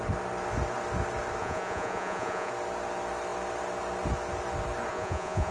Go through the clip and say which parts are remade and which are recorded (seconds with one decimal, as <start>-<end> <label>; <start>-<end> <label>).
0.0-1.4 recorded; 1.4-2.5 remade; 2.5-4.9 recorded; 4.9-5.5 remade